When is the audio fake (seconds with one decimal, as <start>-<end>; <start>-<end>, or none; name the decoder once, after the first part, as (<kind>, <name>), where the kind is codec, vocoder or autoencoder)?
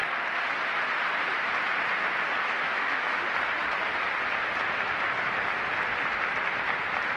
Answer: 2.6-3.2 (autoencoder, DAC-VAE)